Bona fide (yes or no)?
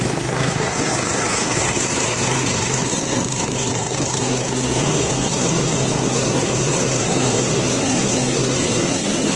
no